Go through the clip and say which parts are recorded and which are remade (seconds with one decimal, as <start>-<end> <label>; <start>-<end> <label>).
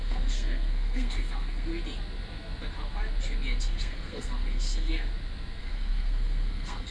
0.0-1.7 remade; 1.7-3.6 recorded; 3.6-5.1 remade; 5.1-5.6 recorded; 5.6-6.9 remade